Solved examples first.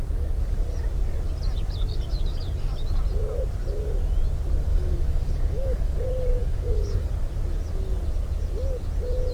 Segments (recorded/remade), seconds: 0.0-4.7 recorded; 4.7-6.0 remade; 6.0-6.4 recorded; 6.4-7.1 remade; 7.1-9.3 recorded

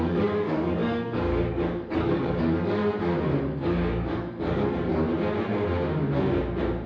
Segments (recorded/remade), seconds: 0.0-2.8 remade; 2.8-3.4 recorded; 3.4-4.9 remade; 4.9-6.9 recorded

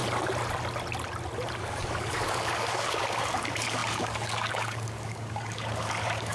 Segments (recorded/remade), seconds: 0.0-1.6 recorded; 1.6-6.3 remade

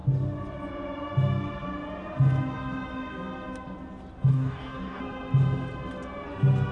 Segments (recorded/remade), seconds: 0.0-4.3 recorded; 4.3-5.0 remade; 5.0-6.7 recorded